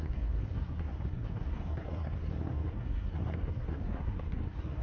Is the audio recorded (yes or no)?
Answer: no